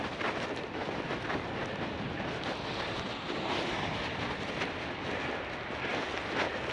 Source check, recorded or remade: recorded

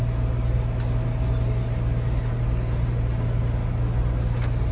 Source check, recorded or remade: recorded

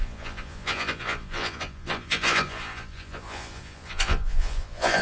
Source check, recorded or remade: remade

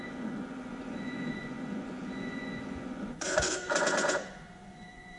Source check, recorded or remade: remade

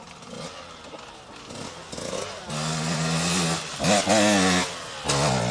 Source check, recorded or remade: recorded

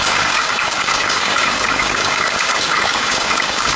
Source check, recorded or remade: remade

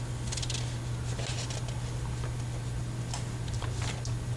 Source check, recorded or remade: recorded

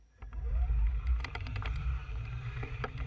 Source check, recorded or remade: remade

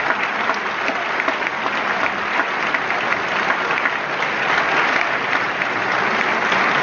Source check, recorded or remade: recorded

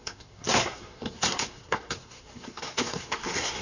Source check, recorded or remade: remade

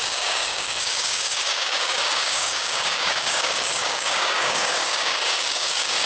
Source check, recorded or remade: remade